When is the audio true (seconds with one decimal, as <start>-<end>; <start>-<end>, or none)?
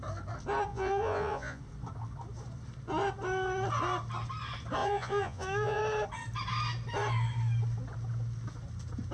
0.0-0.7; 1.6-4.8; 5.8-9.1